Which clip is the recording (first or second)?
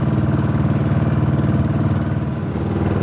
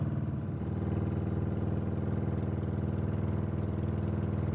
second